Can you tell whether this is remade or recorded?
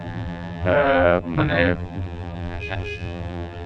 remade